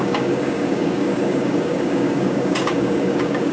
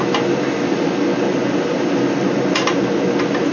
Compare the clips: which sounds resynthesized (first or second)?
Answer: first